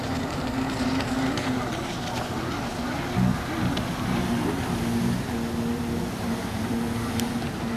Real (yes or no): yes